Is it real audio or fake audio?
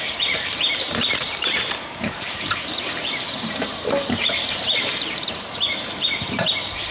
fake